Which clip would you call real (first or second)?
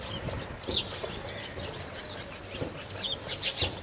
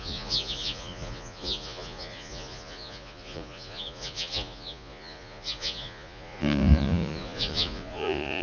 first